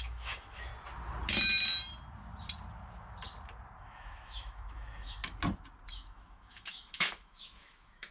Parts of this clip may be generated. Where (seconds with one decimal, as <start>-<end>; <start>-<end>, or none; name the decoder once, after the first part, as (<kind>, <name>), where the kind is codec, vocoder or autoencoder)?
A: 0.0-0.7 (autoencoder, DAC-VAE); 3.8-5.2; 5.9-8.1